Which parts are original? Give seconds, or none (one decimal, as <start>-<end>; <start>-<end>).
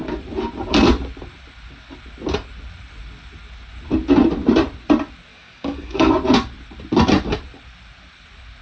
0.0-5.3; 6.1-8.6